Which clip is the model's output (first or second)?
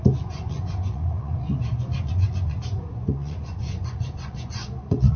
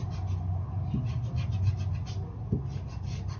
first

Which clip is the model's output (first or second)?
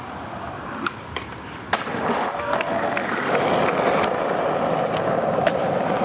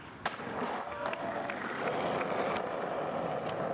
first